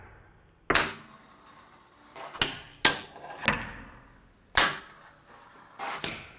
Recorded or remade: recorded